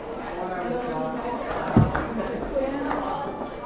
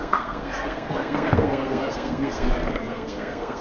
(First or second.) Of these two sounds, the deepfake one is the second